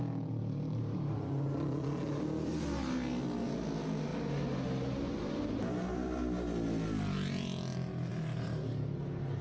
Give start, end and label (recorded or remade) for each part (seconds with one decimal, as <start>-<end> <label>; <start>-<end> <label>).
0.0-0.4 recorded; 0.4-1.1 remade; 1.1-9.4 recorded